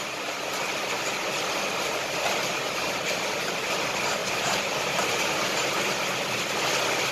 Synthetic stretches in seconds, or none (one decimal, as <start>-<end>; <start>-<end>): 4.2-5.7